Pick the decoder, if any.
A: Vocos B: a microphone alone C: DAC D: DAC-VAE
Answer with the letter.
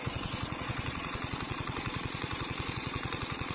A